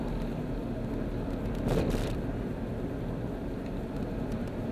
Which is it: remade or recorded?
recorded